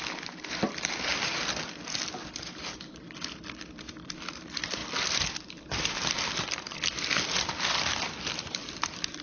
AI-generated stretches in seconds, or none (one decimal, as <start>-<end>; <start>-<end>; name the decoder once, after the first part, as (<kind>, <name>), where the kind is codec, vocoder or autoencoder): 0.0-1.1 (vocoder, BigVGAN v2); 2.0-9.2